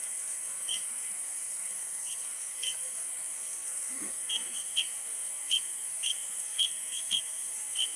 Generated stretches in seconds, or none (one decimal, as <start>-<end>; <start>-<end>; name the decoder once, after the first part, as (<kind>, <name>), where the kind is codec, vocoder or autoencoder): 0.0-8.0 (codec, SNAC)

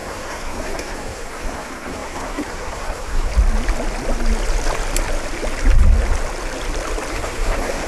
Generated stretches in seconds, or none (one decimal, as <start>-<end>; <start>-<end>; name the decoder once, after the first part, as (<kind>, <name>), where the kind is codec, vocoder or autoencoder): 0.0-3.3 (codec, SNAC); 7.1-7.9

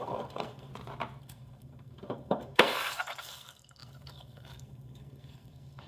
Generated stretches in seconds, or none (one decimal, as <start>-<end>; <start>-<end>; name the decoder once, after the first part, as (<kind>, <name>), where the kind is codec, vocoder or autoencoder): 0.0-0.7 (codec, SNAC); 1.2-5.9

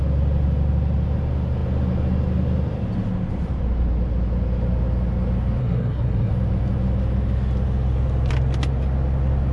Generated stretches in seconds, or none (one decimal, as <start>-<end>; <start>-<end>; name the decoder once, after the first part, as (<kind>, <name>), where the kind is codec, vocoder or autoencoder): 5.6-6.3 (codec, SNAC)

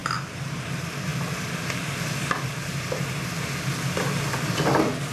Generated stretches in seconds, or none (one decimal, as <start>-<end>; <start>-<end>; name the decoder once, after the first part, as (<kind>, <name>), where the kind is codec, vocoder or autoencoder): none

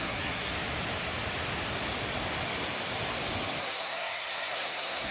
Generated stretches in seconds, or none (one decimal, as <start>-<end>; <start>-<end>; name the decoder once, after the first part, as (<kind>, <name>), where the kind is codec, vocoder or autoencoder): 0.0-0.5 (codec, SNAC); 3.6-5.1

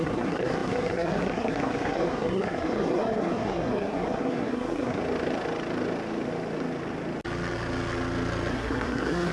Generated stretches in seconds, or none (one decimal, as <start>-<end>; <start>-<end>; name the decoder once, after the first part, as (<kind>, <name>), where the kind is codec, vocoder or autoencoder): 0.0-5.0 (codec, SNAC); 8.5-9.3

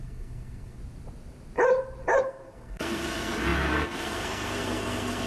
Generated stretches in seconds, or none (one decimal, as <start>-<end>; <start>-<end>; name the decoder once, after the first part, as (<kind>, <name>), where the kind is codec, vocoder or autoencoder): 0.0-0.8 (codec, SNAC); 2.2-5.3